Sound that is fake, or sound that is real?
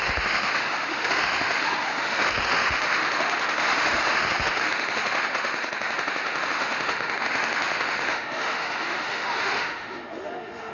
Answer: fake